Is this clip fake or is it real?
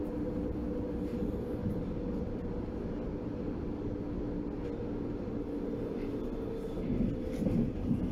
real